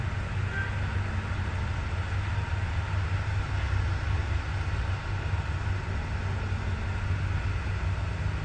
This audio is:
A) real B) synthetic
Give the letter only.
A